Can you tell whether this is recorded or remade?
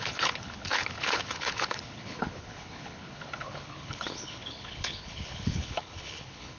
remade